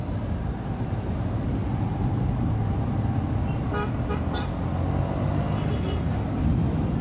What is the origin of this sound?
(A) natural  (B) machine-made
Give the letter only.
A